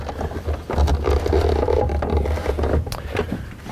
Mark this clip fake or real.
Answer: real